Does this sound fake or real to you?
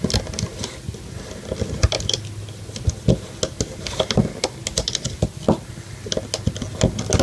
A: real